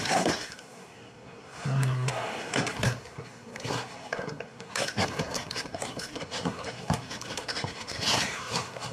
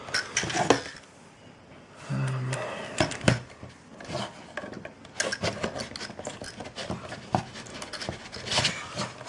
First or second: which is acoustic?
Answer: second